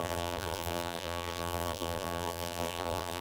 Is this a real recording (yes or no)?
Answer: no